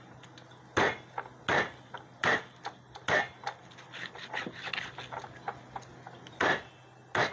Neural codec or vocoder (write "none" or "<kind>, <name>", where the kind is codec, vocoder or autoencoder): none